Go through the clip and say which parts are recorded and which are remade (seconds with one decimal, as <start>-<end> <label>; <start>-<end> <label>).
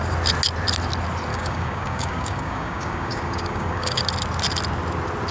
0.0-1.3 recorded; 1.3-4.0 remade; 4.0-5.3 recorded